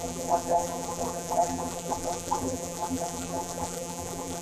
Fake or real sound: fake